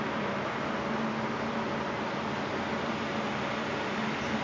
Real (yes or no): yes